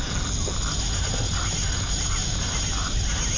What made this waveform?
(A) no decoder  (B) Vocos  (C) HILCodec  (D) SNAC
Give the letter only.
A